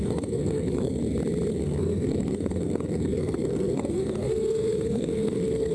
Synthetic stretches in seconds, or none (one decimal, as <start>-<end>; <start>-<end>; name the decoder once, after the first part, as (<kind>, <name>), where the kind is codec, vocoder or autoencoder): 0.0-1.0 (codec, SNAC); 1.5-5.7